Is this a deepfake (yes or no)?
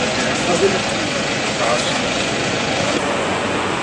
yes